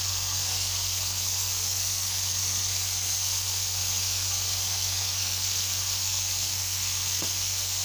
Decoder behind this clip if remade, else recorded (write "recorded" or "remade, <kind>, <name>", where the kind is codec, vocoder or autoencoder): remade, codec, SNAC